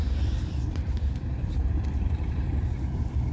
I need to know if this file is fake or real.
fake